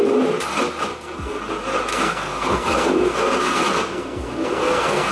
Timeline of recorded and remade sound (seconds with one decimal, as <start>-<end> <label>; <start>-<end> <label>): 0.0-0.9 recorded; 0.9-1.4 remade; 1.4-1.9 recorded; 1.9-5.1 remade